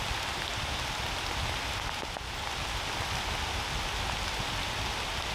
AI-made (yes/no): no